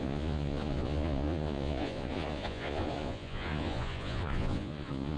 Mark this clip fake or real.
fake